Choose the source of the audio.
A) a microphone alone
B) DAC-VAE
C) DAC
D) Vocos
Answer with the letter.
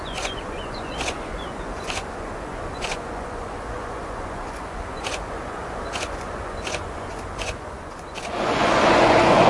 D